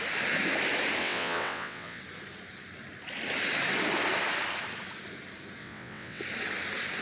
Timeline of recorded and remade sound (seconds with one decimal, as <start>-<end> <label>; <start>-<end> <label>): 0.0-1.0 recorded; 1.0-2.0 remade; 2.0-5.6 recorded; 5.6-6.2 remade; 6.2-7.0 recorded